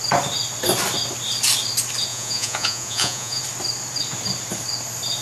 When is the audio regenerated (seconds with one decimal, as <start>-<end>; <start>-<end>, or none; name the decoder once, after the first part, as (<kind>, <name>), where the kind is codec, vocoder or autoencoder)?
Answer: 2.1-3.4 (vocoder, Vocos)